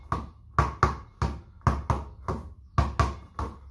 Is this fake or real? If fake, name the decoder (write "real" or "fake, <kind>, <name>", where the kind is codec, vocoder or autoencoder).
real